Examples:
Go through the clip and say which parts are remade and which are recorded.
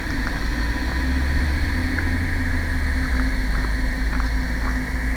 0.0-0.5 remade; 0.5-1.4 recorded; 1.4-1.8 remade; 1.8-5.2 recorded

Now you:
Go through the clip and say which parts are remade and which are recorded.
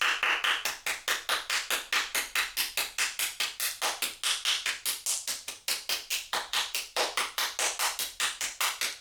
0.0-6.1 recorded; 6.1-7.4 remade; 7.4-9.0 recorded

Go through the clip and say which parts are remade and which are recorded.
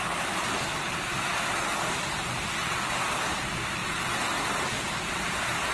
0.0-5.7 recorded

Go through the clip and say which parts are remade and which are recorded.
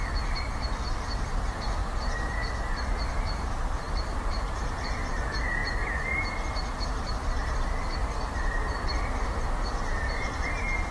0.0-1.8 remade; 1.8-2.9 recorded; 2.9-10.9 remade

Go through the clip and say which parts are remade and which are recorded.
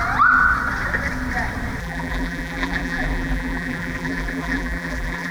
0.0-1.8 recorded; 1.8-5.3 remade